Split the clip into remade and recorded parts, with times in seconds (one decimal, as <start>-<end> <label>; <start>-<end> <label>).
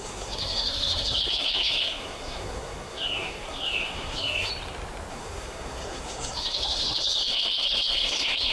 0.0-4.5 remade; 4.5-5.1 recorded; 5.1-8.5 remade